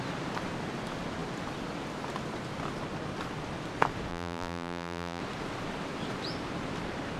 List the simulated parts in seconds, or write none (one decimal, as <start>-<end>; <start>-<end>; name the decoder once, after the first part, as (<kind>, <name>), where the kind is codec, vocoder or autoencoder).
4.1-5.2 (vocoder, BigVGAN v2)